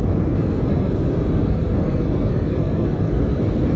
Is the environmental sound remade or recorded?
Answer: remade